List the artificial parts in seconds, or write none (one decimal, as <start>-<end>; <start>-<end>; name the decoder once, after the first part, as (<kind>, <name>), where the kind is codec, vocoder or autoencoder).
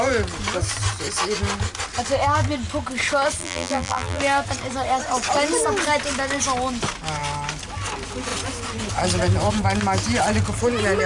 3.4-4.2 (vocoder, BigVGAN v2)